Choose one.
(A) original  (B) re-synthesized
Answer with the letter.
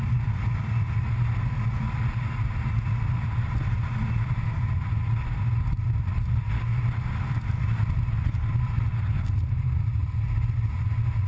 A